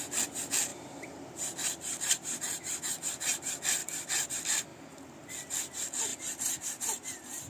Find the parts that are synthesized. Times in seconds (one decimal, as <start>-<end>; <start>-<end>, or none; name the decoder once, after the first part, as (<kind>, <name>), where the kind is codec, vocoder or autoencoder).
0.7-2.9 (vocoder, BigVGAN v2); 3.8-4.3; 6.1-7.5